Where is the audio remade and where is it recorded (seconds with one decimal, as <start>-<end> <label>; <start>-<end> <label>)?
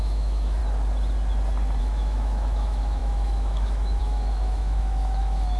0.0-0.6 remade; 0.6-1.8 recorded; 1.8-5.6 remade